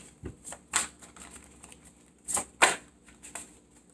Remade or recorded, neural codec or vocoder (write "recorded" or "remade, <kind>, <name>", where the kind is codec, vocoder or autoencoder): recorded